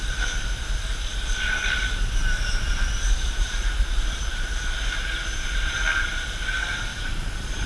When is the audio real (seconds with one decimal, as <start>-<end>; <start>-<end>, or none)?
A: none

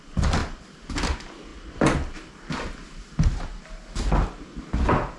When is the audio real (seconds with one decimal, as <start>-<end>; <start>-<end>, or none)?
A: 0.0-0.4; 1.0-5.2

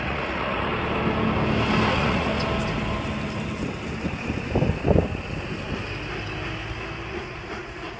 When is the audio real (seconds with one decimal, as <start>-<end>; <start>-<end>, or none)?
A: 0.7-1.9; 2.3-7.1

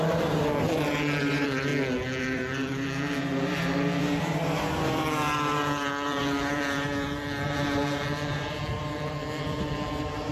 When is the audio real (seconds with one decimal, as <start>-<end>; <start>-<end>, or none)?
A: 1.7-2.2

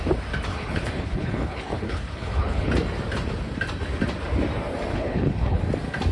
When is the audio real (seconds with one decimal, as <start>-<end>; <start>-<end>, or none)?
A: 0.0-0.5; 2.7-4.9; 5.6-6.1

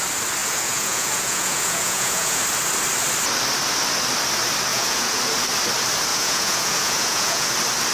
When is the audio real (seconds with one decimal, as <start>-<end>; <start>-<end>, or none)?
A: 0.0-0.4; 2.4-4.7; 5.2-6.1; 7.5-7.9